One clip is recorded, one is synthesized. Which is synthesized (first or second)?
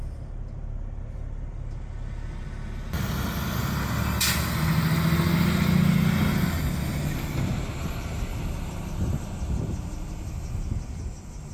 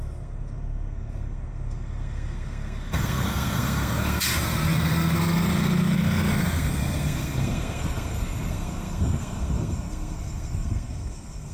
second